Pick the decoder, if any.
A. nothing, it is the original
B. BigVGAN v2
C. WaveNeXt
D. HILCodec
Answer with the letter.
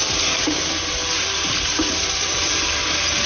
B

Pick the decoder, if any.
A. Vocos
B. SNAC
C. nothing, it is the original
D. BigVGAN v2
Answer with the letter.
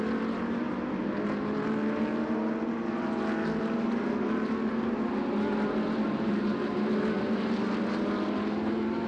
C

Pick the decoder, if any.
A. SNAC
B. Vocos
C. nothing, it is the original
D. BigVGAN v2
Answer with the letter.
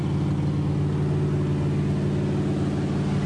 C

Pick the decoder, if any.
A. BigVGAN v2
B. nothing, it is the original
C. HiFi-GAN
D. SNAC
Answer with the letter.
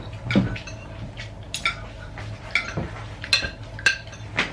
B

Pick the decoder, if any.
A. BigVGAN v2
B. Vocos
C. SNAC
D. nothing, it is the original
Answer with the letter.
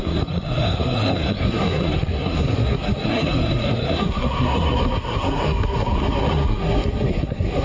C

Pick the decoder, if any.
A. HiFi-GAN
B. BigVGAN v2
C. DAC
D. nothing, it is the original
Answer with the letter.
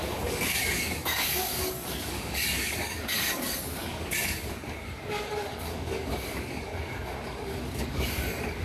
C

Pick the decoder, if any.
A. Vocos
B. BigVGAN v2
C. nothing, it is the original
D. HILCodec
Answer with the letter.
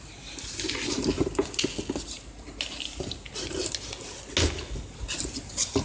C